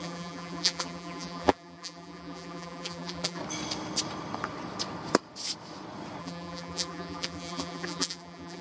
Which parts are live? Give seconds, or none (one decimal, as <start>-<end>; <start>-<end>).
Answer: 3.4-6.2